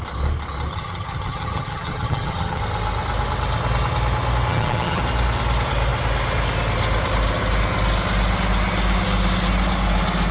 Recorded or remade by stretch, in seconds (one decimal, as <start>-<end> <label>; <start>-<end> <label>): 0.0-0.7 recorded; 0.7-2.6 remade; 2.6-4.5 recorded; 4.5-5.0 remade; 5.0-10.3 recorded